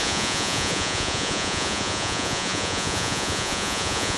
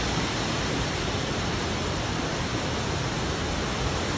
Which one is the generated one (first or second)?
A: first